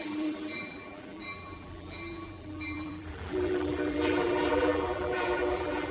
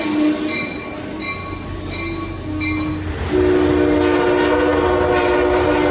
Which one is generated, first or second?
first